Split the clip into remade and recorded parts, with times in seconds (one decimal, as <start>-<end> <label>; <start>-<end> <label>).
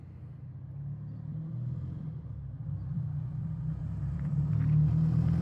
0.0-1.3 recorded; 1.3-4.5 remade; 4.5-5.4 recorded